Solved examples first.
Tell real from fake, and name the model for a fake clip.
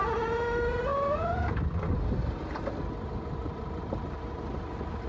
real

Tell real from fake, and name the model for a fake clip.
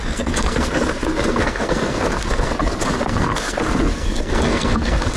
fake, codec, SNAC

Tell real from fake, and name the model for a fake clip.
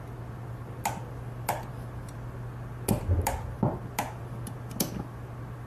real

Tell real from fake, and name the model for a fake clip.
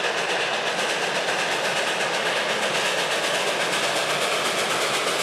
real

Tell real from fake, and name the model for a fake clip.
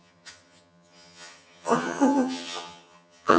fake, vocoder, HiFi-GAN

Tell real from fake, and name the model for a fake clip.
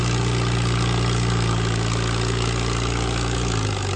real